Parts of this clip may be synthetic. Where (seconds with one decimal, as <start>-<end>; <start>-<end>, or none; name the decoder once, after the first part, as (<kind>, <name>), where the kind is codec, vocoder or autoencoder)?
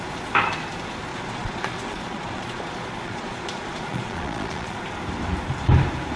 1.1-4.8 (vocoder, Vocos)